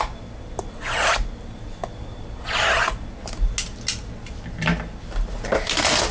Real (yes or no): yes